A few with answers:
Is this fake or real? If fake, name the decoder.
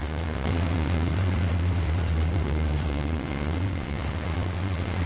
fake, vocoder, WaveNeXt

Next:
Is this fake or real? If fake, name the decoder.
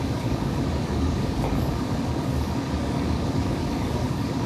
fake, codec, DAC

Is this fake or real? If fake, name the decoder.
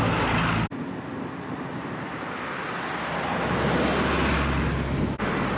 real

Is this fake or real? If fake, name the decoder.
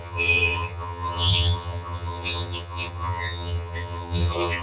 fake, vocoder, HiFi-GAN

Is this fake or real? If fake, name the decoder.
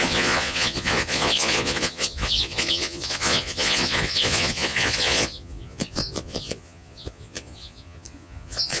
fake, vocoder, Vocos